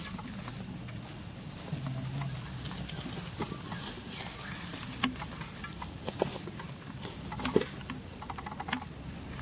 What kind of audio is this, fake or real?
real